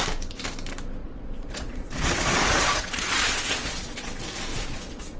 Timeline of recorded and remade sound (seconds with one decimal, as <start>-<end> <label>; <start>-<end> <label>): 0.0-1.0 recorded; 1.0-4.1 remade; 4.1-4.5 recorded; 4.5-5.2 remade